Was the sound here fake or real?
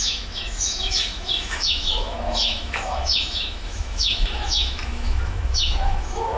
fake